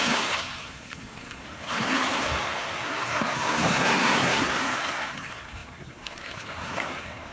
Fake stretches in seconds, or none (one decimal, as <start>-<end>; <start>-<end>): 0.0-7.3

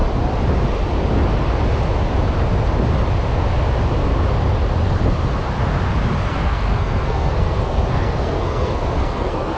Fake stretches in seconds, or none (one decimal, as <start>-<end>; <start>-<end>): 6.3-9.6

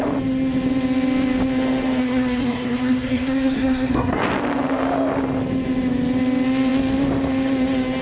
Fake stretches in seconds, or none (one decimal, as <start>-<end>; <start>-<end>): 2.0-4.2